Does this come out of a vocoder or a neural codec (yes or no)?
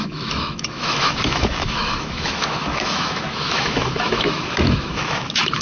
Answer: yes